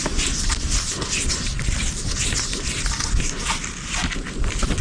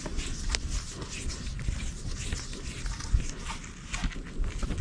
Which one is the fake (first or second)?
first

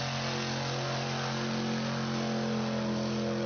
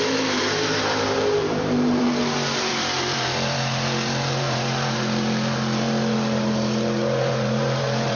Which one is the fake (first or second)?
second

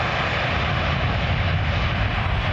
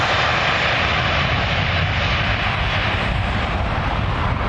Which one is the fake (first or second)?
second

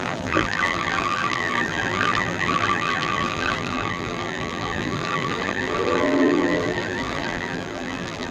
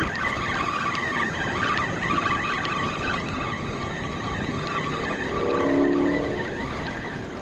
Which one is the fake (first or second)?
first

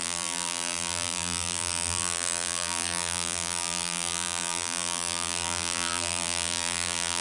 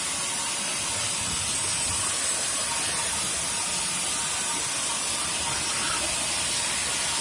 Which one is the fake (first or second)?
first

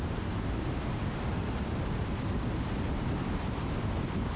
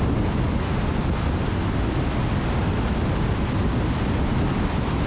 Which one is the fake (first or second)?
first